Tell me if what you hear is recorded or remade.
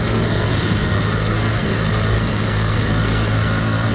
remade